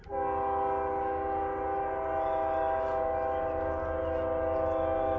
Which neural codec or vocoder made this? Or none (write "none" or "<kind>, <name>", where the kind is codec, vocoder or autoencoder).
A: none